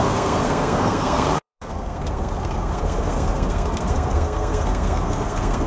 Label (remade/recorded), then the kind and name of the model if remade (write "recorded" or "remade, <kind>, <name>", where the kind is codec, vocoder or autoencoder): remade, codec, SNAC